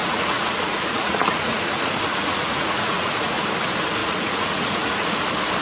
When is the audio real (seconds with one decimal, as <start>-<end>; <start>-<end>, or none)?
3.4-4.0; 5.1-5.6